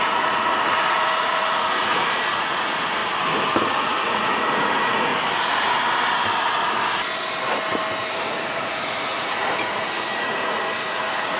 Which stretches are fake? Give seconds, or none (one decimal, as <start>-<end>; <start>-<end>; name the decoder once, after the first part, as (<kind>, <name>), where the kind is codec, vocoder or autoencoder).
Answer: 0.0-3.0 (vocoder, Vocos); 3.6-5.1; 8.0-11.4